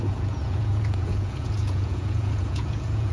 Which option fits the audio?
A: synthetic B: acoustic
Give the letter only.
A